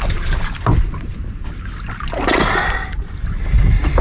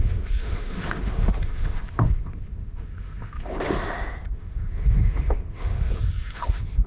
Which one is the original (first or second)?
first